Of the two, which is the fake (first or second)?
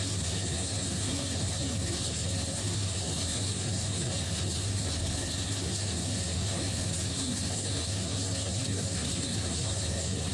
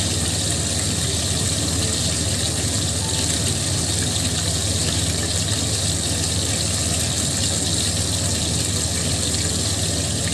first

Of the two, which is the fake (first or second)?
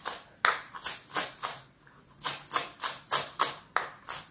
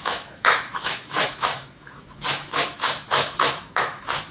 second